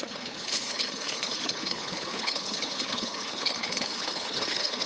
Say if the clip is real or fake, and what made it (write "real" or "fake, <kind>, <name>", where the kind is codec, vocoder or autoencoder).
fake, codec, HILCodec